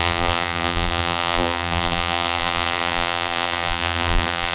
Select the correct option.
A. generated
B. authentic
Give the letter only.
A